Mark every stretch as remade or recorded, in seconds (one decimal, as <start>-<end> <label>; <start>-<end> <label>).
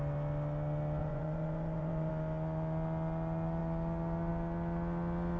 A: 0.0-1.0 recorded; 1.0-2.1 remade; 2.1-5.4 recorded